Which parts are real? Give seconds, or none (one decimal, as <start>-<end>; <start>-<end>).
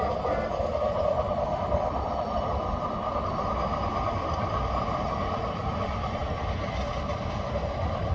none